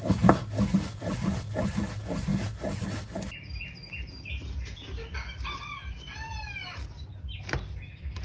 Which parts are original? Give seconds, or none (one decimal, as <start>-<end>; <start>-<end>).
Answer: 0.0-8.2